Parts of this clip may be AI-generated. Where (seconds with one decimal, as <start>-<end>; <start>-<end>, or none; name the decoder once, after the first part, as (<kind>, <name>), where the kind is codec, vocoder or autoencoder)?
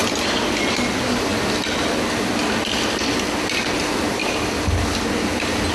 none